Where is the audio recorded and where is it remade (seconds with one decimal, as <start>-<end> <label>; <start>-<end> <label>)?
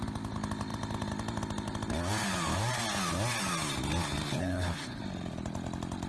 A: 0.0-4.3 recorded; 4.3-5.0 remade; 5.0-6.1 recorded